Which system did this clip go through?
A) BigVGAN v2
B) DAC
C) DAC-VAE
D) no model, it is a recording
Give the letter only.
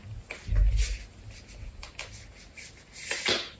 D